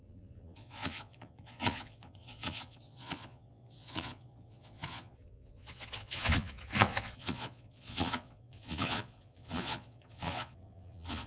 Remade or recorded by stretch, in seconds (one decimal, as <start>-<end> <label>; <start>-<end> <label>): 0.0-11.3 remade

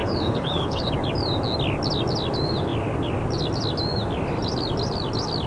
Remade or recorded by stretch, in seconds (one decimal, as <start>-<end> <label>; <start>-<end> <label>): 0.0-0.9 remade; 0.9-5.5 recorded

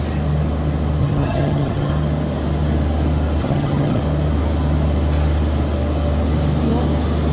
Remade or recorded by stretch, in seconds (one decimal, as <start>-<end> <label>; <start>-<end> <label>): 0.0-1.0 recorded; 1.0-1.9 remade; 1.9-3.4 recorded; 3.4-4.0 remade; 4.0-7.3 recorded

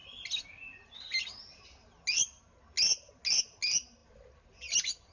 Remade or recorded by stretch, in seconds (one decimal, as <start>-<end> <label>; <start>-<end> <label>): 0.0-5.1 recorded

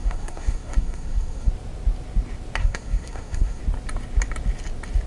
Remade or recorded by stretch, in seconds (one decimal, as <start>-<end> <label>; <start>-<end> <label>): 0.0-1.5 remade; 1.5-2.6 recorded; 2.6-3.6 remade; 3.6-5.1 recorded

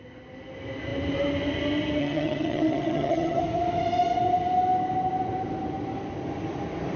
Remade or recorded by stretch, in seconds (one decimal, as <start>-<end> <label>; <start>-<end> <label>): 0.0-2.0 recorded; 2.0-3.4 remade; 3.4-7.0 recorded

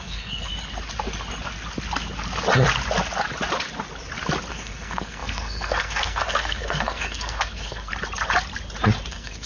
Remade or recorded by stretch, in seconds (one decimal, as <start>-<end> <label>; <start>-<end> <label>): 0.0-0.5 remade; 0.5-4.5 recorded; 4.5-7.9 remade; 7.9-9.1 recorded; 9.1-9.5 remade

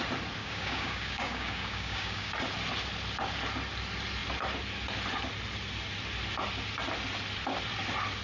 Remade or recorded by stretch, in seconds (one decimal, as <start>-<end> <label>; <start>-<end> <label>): 0.0-0.4 recorded; 0.4-2.3 remade; 2.3-8.2 recorded